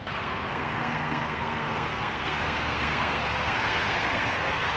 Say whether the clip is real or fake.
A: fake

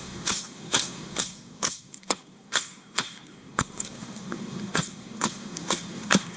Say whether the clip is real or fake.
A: fake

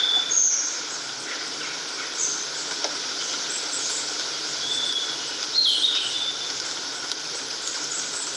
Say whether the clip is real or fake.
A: real